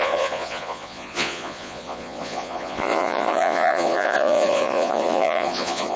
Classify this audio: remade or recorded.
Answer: remade